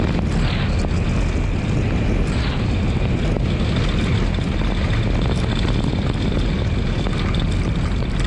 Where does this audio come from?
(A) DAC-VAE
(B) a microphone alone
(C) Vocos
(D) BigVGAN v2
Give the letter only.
B